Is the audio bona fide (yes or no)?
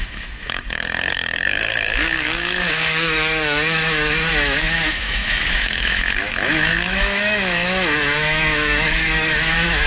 no